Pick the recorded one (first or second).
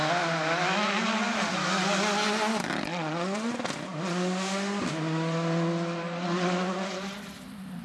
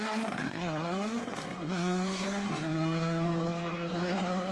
first